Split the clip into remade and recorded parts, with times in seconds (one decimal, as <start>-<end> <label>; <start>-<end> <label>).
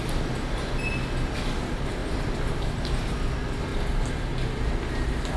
0.0-5.4 recorded